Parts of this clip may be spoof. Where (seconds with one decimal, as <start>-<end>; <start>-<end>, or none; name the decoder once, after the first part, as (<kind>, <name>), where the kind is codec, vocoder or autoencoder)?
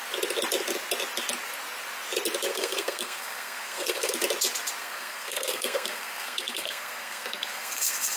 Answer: 2.5-4.1 (codec, SNAC); 4.8-8.2